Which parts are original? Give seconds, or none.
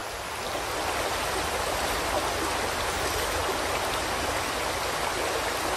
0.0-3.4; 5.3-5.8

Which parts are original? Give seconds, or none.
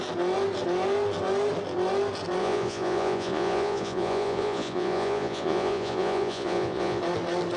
0.0-2.4; 7.0-7.6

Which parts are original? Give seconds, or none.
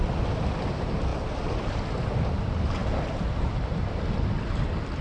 0.0-5.0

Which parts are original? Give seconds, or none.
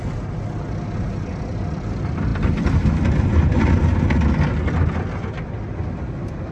0.0-6.5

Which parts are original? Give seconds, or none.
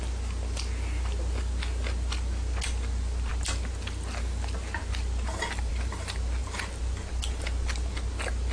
0.0-8.5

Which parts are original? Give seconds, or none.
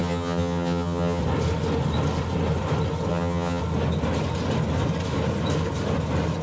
1.2-3.1; 3.6-6.4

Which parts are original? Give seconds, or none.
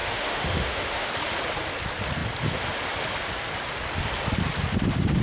1.1-5.2